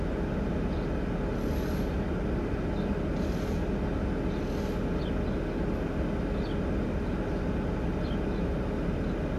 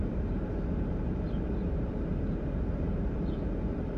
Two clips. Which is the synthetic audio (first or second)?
second